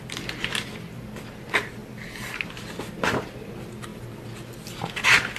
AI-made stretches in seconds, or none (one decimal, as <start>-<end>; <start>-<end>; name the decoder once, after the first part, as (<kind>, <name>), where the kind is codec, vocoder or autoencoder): 1.8-3.5 (vocoder, BigVGAN v2)